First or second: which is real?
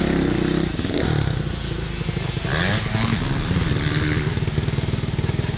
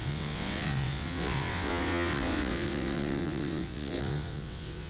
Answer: first